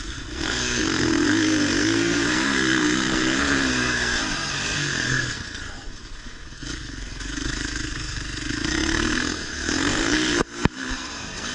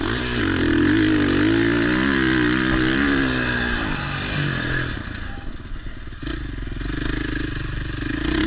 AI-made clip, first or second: first